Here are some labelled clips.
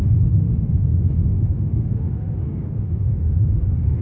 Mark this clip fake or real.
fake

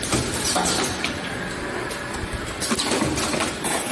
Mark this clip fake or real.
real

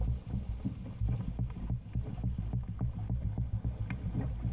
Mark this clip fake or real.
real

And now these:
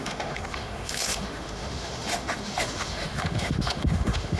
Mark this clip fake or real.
fake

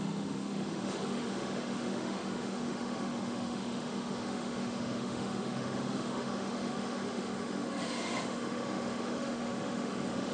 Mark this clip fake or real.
fake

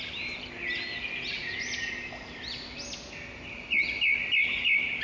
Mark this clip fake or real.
real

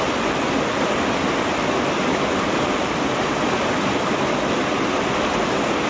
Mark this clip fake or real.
real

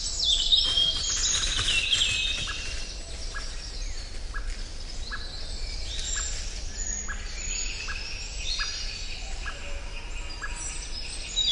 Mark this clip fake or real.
real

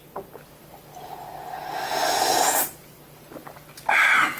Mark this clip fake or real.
real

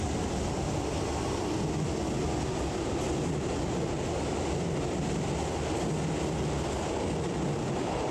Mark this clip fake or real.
real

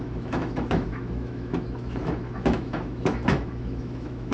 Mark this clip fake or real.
fake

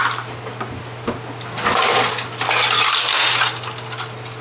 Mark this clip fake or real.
real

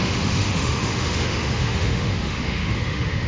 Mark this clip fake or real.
fake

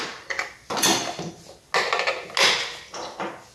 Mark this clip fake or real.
real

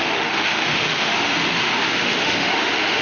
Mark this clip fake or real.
fake